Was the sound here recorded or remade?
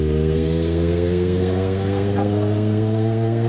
remade